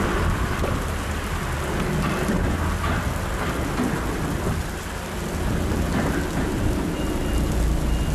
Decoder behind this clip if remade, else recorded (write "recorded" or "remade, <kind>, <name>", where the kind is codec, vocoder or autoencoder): recorded